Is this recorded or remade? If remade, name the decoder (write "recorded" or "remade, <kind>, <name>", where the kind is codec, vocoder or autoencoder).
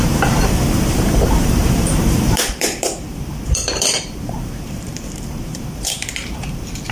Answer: remade, vocoder, BigVGAN v2